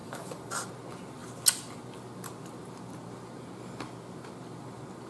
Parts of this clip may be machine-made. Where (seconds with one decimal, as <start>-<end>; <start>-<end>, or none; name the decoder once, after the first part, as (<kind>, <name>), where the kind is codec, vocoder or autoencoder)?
0.0-0.7 (vocoder, BigVGAN v2)